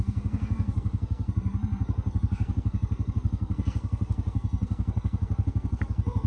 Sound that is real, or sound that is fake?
fake